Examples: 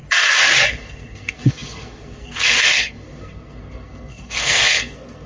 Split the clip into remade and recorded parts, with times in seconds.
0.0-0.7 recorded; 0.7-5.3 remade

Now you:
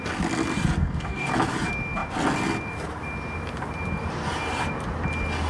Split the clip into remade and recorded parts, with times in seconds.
0.0-0.8 recorded; 0.8-1.3 remade; 1.3-5.5 recorded

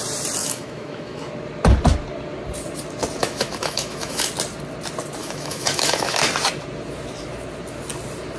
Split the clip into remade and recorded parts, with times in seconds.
0.0-0.4 recorded; 0.4-1.3 remade; 1.3-3.2 recorded; 3.2-4.3 remade; 4.3-5.2 recorded; 5.2-6.2 remade; 6.2-8.4 recorded

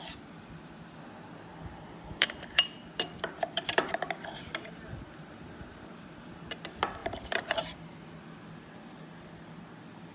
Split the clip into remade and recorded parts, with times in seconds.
0.0-1.5 recorded; 1.5-6.5 remade; 6.5-7.0 recorded; 7.0-7.8 remade; 7.8-10.1 recorded

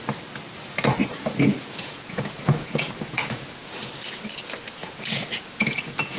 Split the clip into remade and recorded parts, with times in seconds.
0.0-1.0 recorded; 1.0-3.7 remade; 3.7-4.8 recorded; 4.8-6.2 remade

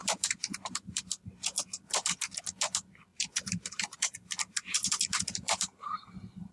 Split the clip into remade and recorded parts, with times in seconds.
0.0-1.0 remade; 1.0-3.1 recorded; 3.1-6.5 remade